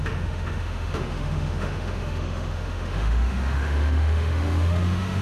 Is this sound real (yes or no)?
no